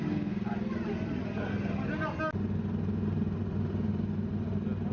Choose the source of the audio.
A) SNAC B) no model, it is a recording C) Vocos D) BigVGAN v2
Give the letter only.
B